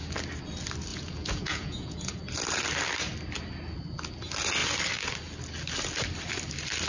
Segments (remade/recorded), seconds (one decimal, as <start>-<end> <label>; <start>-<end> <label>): 0.0-0.9 recorded; 0.9-2.2 remade; 2.2-6.9 recorded